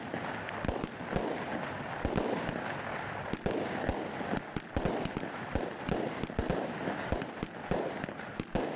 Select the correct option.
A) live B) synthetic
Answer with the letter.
A